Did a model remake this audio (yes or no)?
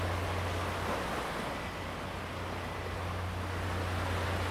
no